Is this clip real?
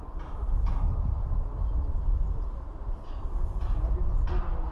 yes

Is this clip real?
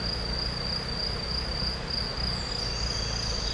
yes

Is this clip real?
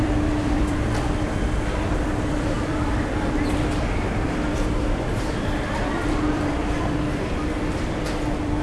no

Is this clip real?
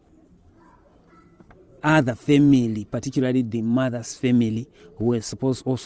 no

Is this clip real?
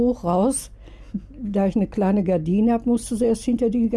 yes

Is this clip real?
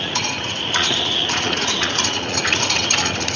no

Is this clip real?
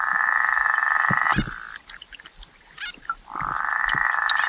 yes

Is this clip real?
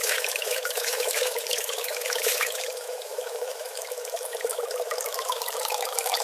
no